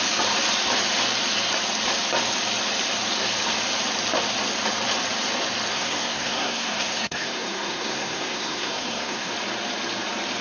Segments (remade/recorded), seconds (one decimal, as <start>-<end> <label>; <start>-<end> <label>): 0.0-5.7 recorded; 5.7-9.3 remade; 9.3-10.4 recorded